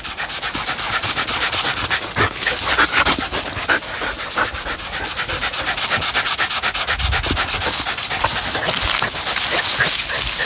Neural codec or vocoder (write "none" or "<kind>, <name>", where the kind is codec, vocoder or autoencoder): none